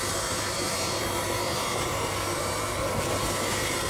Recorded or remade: remade